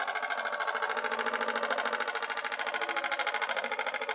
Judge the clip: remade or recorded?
recorded